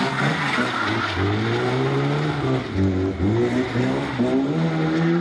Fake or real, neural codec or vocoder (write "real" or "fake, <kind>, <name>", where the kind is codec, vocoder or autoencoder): real